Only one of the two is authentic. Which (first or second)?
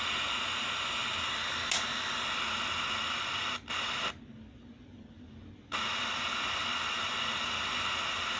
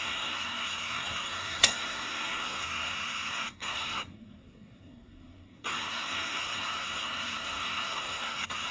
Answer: first